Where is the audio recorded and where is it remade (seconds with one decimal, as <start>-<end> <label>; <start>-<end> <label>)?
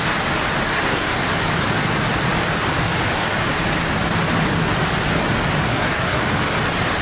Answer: 0.0-0.7 recorded; 0.7-1.3 remade; 1.3-5.6 recorded; 5.6-6.2 remade; 6.2-7.0 recorded